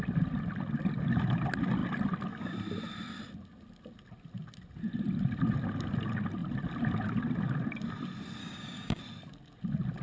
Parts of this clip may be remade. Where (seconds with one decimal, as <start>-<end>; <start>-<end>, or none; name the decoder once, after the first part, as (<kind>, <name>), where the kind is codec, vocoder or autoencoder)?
8.4-9.0 (codec, DAC)